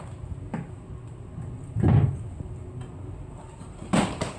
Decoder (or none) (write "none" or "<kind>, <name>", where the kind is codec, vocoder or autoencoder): none